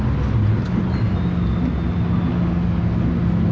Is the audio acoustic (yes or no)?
yes